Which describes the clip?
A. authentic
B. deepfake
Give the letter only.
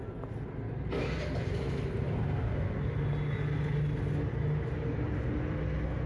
A